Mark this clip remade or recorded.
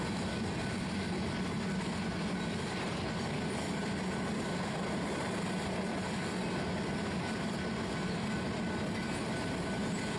recorded